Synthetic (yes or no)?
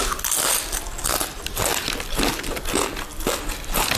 no